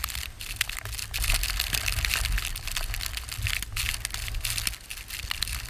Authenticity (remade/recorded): recorded